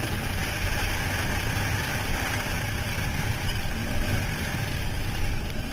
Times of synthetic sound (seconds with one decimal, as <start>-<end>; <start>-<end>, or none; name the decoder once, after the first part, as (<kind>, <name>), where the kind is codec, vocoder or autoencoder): 1.9-3.2 (vocoder, BigVGAN v2); 3.8-5.7